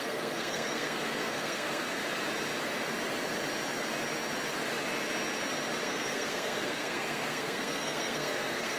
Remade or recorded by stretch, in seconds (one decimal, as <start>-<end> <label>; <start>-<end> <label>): 0.0-2.0 remade; 2.0-5.8 recorded; 5.8-8.8 remade